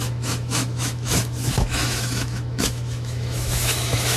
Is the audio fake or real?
fake